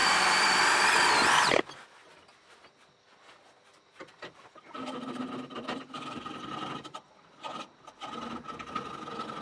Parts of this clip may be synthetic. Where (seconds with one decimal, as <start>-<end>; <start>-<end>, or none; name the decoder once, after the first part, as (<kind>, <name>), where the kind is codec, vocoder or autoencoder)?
0.0-1.5 (vocoder, BigVGAN v2); 3.7-7.1